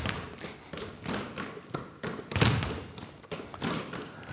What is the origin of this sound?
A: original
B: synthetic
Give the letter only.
A